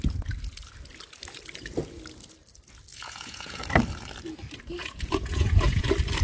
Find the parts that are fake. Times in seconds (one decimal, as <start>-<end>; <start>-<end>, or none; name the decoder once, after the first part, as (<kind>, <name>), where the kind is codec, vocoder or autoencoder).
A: 2.9-3.6 (vocoder, Vocos); 4.8-5.8